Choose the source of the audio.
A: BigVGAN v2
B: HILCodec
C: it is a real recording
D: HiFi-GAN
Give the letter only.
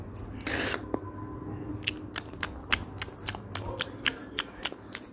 C